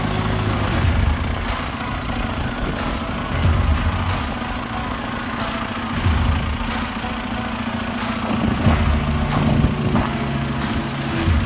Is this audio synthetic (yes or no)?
no